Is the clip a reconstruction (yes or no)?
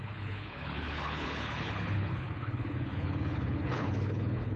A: yes